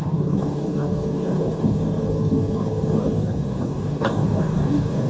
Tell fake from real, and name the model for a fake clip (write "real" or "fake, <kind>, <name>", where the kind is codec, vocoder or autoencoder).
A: fake, codec, DAC